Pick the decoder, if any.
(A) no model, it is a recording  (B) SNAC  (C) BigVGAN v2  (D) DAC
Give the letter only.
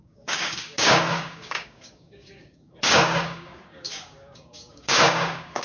D